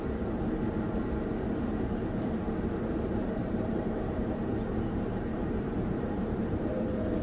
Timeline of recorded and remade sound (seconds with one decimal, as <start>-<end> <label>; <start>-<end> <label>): 0.0-3.4 recorded; 3.4-4.5 remade; 4.5-5.3 recorded; 5.3-7.2 remade